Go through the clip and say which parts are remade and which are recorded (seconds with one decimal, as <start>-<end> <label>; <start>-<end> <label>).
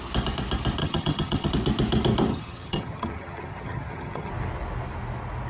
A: 0.0-0.8 recorded; 0.8-1.5 remade; 1.5-2.3 recorded; 2.3-4.3 remade; 4.3-5.5 recorded